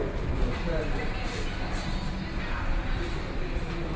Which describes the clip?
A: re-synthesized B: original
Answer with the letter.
B